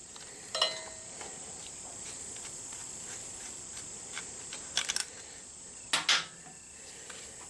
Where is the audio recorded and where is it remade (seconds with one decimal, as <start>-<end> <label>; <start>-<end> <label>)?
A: 0.0-7.5 recorded